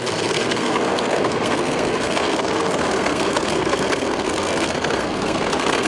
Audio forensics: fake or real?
fake